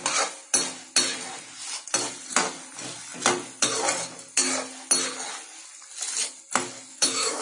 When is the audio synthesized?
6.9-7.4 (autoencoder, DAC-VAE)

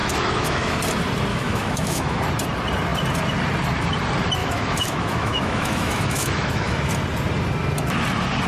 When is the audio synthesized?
0.0-0.8 (autoencoder, DAC-VAE); 1.3-2.2; 4.4-6.9